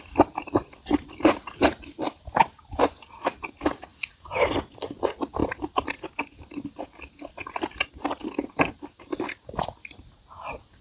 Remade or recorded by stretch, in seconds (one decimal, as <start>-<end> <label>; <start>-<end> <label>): 0.0-10.8 recorded